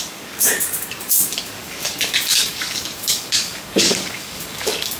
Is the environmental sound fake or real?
fake